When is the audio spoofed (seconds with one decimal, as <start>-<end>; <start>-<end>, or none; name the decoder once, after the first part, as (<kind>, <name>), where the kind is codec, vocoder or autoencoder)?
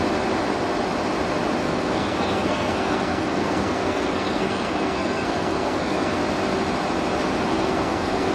1.6-6.2 (codec, SNAC); 7.5-8.3